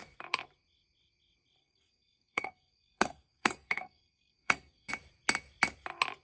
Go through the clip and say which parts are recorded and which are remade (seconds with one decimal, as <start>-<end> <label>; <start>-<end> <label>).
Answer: 0.0-1.6 recorded; 1.6-4.9 remade; 4.9-6.2 recorded